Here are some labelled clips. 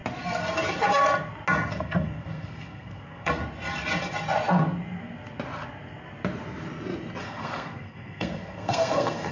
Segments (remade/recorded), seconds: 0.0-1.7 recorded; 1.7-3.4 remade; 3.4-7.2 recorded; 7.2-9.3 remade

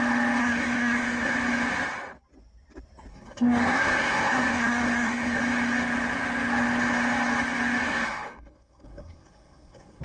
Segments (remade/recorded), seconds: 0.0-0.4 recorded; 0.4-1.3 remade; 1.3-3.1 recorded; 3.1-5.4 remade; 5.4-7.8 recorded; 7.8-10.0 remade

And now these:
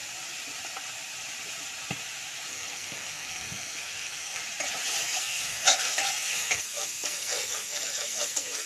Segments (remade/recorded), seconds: 0.0-2.5 recorded; 2.5-4.4 remade; 4.4-5.0 recorded; 5.0-8.7 remade